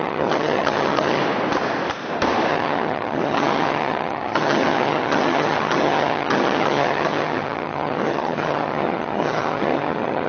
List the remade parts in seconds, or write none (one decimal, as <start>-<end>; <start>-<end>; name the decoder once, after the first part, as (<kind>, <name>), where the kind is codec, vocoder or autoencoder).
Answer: 0.0-1.2 (vocoder, HiFi-GAN); 2.5-10.3